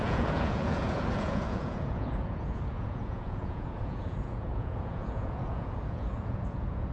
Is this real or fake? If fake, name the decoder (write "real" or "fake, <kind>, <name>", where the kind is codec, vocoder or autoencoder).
fake, vocoder, Vocos